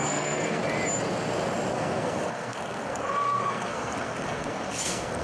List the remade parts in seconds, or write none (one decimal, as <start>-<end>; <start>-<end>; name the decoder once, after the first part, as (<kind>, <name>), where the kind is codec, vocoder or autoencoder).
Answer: 0.0-0.6 (codec, SNAC); 1.7-5.2